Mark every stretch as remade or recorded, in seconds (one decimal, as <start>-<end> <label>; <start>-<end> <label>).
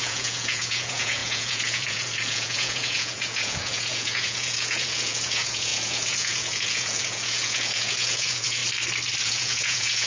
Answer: 0.0-8.6 remade; 8.6-9.2 recorded; 9.2-10.1 remade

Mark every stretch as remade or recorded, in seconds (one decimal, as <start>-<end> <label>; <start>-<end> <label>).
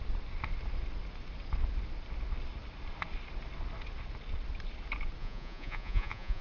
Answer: 0.0-5.2 recorded; 5.2-6.4 remade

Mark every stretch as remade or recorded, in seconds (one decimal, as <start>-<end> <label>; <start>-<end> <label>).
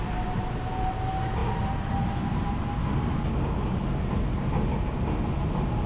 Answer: 0.0-5.9 recorded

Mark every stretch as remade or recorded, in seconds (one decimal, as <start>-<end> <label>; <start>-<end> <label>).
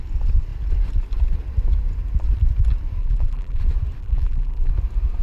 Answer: 0.0-3.0 recorded; 3.0-3.6 remade; 3.6-4.0 recorded; 4.0-4.7 remade; 4.7-5.2 recorded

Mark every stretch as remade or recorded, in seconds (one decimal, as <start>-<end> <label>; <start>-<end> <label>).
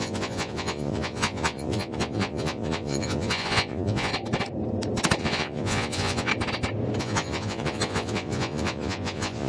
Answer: 0.0-4.1 remade; 4.1-5.2 recorded; 5.2-6.3 remade; 6.3-7.0 recorded; 7.0-9.5 remade